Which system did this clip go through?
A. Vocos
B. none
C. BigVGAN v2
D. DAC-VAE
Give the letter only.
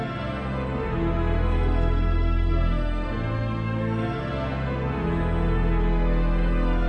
B